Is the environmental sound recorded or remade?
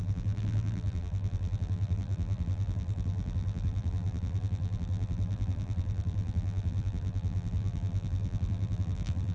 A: remade